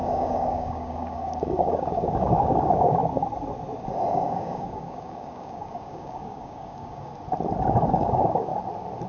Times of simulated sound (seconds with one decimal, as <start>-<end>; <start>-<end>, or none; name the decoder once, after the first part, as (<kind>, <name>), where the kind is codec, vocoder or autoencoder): 0.0-3.0 (codec, DAC); 4.1-7.1; 7.9-8.5